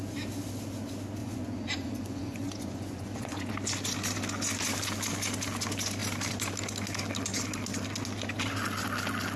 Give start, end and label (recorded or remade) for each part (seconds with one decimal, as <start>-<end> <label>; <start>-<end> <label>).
0.0-1.2 recorded; 1.2-3.5 remade; 3.5-9.4 recorded